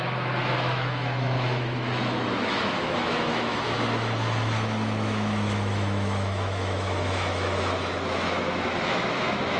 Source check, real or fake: fake